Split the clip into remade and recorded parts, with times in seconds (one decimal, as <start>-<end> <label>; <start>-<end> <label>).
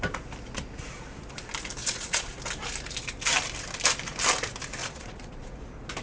0.0-1.8 recorded; 1.8-2.4 remade; 2.4-4.8 recorded; 4.8-5.5 remade; 5.5-6.0 recorded